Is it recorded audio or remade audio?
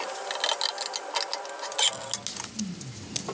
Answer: recorded